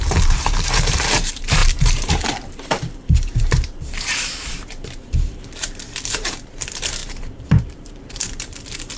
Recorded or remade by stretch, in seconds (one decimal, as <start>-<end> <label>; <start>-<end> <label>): 0.0-9.0 remade